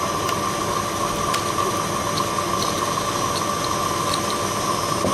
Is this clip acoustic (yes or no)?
no